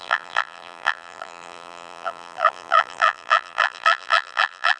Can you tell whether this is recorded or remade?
remade